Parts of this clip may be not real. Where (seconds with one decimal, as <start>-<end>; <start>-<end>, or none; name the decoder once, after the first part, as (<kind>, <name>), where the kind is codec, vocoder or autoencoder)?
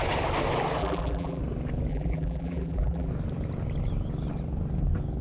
0.8-1.4 (vocoder, BigVGAN v2); 1.9-3.1